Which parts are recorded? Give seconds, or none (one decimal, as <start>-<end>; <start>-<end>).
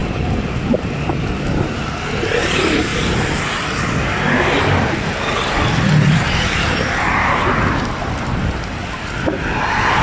0.0-10.0